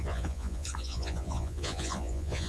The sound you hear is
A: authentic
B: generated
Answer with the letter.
B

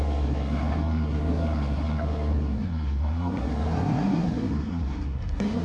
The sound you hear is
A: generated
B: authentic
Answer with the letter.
A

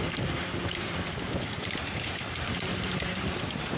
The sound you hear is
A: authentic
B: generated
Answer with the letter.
B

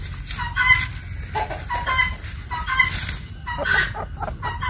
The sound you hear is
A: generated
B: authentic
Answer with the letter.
B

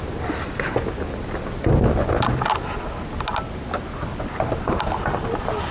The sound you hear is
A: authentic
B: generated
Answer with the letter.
A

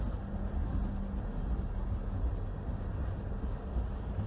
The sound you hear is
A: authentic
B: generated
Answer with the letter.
A